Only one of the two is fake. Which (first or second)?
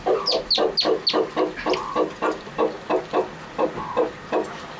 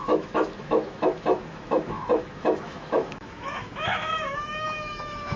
second